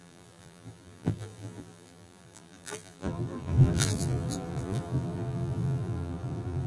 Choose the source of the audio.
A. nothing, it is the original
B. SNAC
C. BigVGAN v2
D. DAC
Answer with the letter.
C